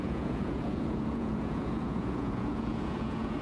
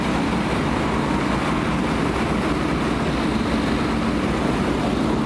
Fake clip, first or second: first